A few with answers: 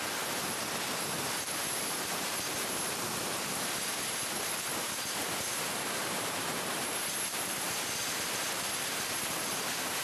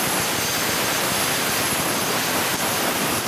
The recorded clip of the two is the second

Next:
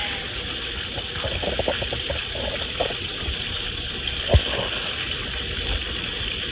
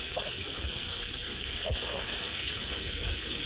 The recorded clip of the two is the first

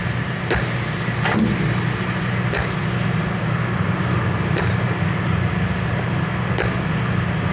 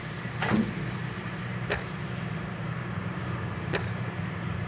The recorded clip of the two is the first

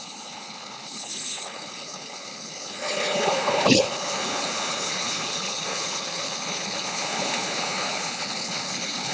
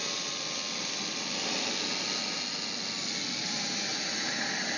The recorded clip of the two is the second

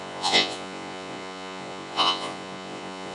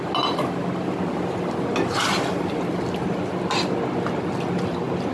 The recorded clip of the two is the second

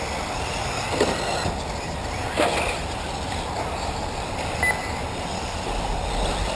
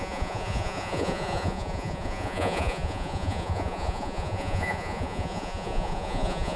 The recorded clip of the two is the first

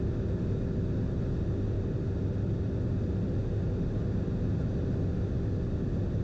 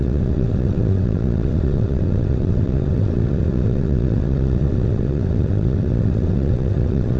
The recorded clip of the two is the first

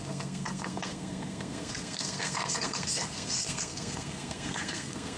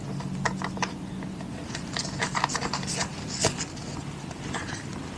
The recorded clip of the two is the second